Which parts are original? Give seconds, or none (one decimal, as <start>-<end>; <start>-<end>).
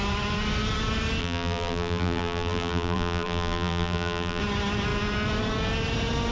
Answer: 0.0-1.2; 4.4-6.3